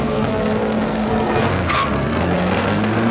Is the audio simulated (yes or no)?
yes